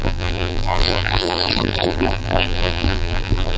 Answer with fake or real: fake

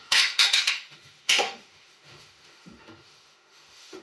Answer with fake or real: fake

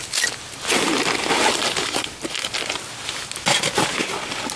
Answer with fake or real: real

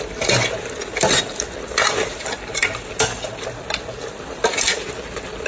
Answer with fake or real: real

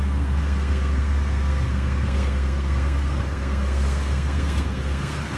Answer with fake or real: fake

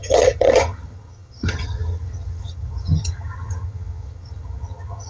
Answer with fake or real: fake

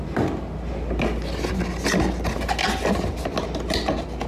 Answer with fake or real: real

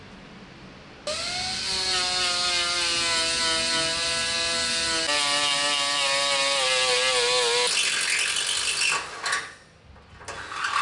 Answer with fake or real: real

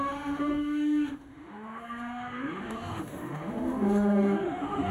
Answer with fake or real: fake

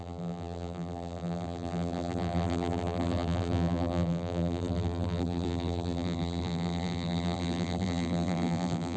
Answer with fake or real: fake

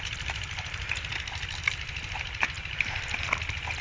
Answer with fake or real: real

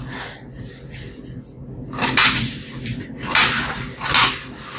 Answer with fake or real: real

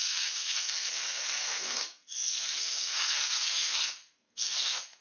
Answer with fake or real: fake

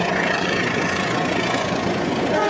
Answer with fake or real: fake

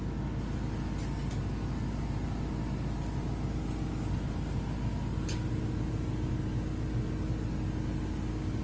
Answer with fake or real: real